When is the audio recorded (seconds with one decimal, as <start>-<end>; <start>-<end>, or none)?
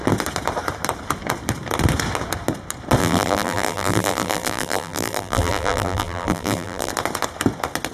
0.0-3.0; 6.9-7.9